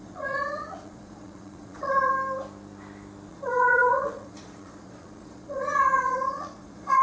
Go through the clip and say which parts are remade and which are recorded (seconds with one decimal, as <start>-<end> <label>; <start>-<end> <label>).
0.0-2.1 remade; 2.1-3.3 recorded; 3.3-7.0 remade